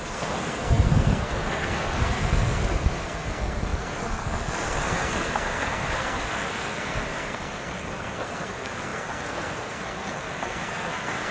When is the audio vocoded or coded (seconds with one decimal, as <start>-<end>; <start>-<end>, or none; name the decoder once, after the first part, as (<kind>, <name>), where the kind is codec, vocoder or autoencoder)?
0.0-11.3 (codec, SNAC)